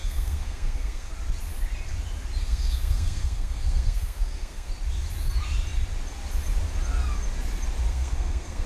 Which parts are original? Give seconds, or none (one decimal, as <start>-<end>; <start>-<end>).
1.1-2.4; 4.7-7.9